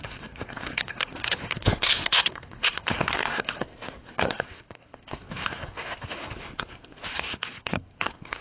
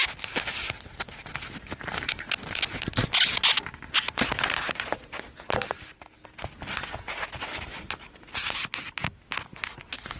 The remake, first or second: first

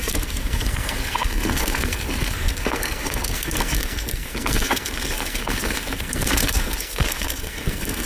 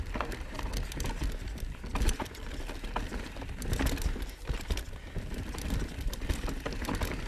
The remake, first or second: first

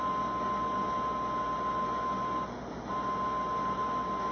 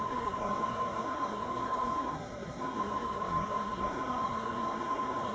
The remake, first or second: second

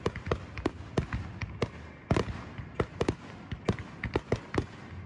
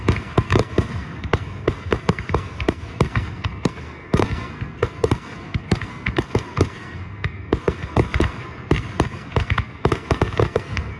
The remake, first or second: second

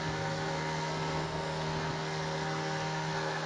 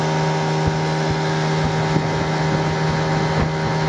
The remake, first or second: first